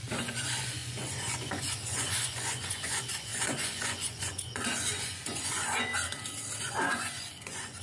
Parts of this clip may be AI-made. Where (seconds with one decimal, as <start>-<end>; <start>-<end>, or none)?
0.0-5.9; 6.6-7.8